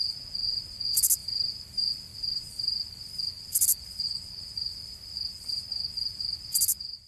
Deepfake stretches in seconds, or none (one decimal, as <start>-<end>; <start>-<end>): 1.2-4.0; 4.7-5.7